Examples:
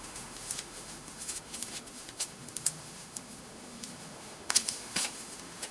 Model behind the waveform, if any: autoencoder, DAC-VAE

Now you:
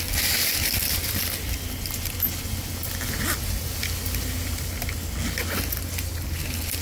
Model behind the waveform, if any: none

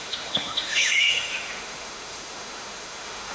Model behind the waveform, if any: autoencoder, DAC-VAE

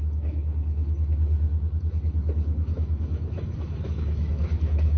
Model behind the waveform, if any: autoencoder, DAC-VAE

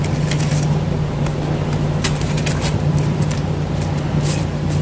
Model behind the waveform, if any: none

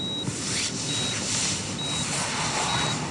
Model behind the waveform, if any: none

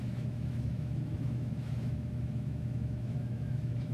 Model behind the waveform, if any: autoencoder, DAC-VAE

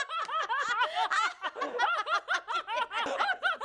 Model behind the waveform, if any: none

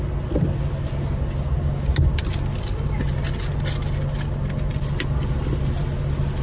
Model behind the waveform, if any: none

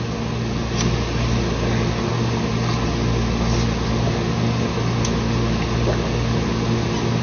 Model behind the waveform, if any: none